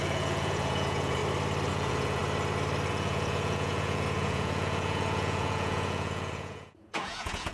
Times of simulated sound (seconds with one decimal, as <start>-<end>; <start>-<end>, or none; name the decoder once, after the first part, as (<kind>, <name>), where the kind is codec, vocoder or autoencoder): 0.0-1.2 (vocoder, Vocos); 1.7-2.2; 2.9-7.5